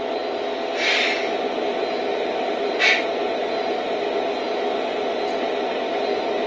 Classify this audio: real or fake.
real